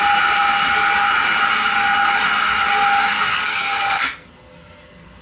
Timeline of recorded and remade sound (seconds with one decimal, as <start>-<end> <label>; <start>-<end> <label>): 0.0-3.3 recorded; 3.3-5.2 remade